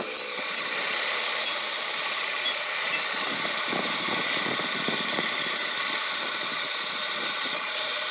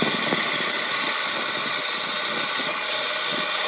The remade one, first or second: first